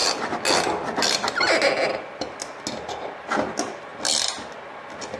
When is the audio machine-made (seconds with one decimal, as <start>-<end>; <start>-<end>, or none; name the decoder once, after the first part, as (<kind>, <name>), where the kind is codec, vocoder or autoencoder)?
none